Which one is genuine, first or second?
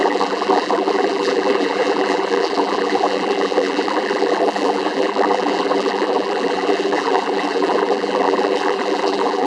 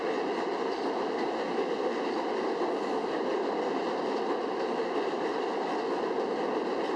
second